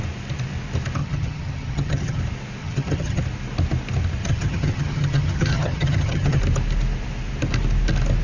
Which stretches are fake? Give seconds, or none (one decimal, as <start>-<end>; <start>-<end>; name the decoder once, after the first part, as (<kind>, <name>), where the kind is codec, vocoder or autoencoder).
1.0-2.2 (vocoder, HiFi-GAN); 2.6-3.2; 4.2-6.4